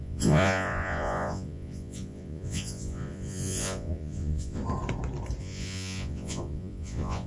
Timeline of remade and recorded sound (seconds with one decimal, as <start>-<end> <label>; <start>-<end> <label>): 0.0-4.6 remade; 4.6-5.4 recorded; 5.4-7.3 remade